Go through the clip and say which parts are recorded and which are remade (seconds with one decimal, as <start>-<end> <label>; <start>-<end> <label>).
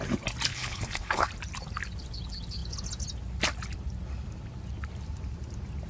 0.0-0.5 recorded; 0.5-1.3 remade; 1.3-5.9 recorded